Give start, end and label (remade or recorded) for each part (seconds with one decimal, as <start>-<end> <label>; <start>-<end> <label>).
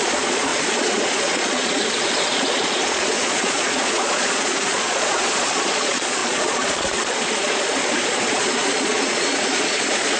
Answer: 0.0-10.2 remade